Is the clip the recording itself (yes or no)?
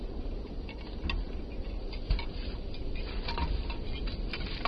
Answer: yes